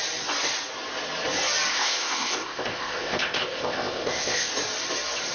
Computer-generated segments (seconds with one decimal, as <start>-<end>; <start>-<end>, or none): 1.7-4.5